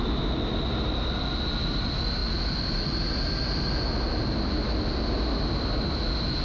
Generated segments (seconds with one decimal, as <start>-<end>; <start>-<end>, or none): none